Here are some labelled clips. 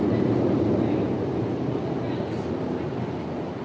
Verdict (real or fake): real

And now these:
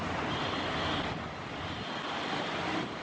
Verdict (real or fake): real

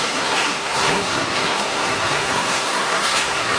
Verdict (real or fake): fake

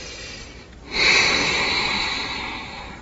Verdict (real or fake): real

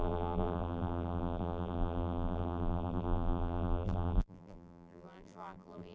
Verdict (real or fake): fake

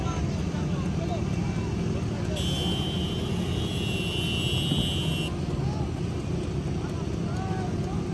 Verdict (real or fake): real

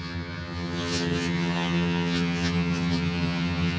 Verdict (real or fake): fake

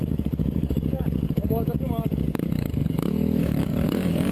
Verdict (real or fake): fake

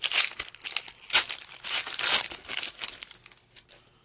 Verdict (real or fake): real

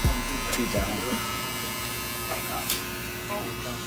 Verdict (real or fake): real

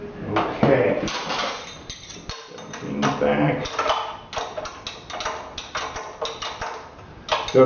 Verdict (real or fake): real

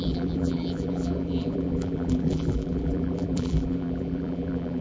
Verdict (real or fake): fake